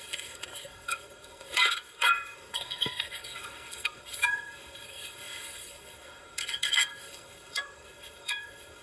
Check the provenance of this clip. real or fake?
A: fake